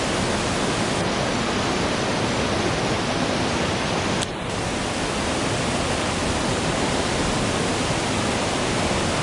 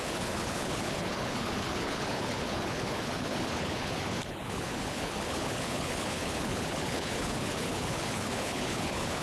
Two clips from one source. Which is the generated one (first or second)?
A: second